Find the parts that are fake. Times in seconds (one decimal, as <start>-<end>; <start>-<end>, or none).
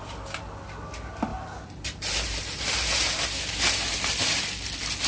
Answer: 1.3-4.4